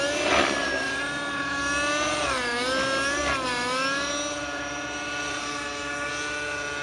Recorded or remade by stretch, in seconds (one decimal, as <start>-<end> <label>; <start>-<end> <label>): 0.0-5.4 recorded; 5.4-6.1 remade; 6.1-6.8 recorded